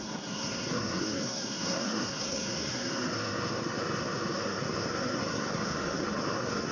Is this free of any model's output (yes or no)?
no